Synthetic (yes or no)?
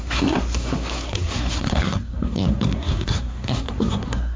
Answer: yes